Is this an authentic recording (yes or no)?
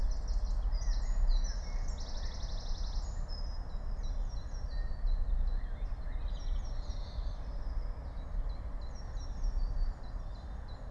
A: yes